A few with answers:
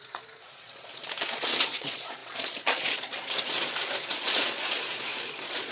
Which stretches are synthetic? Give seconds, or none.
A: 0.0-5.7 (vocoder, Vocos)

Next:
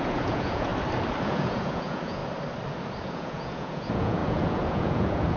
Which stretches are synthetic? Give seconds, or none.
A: 0.0-0.7 (vocoder, Vocos); 1.2-2.2; 3.0-5.4

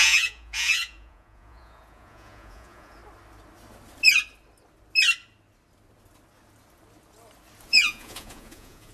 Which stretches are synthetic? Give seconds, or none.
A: 0.0-3.0 (vocoder, Vocos); 7.7-8.9

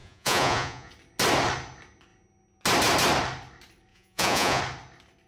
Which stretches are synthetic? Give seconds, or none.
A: 0.0-0.9 (vocoder, Vocos); 3.9-4.6

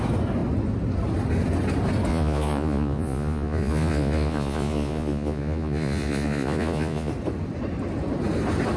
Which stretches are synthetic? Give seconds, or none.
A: 2.1-7.1 (vocoder, Vocos)

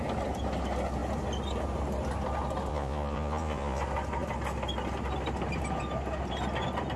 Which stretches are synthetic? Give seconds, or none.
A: 2.7-3.8 (vocoder, Vocos)

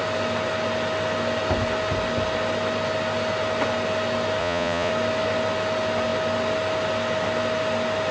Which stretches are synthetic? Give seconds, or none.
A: 4.4-4.9 (vocoder, Vocos)